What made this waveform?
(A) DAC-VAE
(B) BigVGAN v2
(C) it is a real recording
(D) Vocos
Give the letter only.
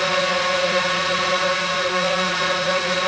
D